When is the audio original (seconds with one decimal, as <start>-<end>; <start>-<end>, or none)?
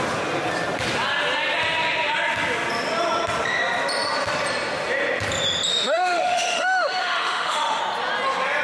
0.0-5.7; 7.8-8.6